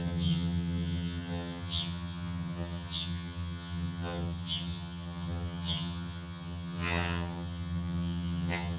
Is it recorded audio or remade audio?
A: remade